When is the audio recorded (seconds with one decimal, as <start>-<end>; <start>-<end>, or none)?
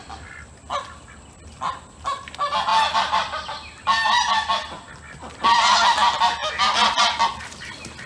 0.0-8.1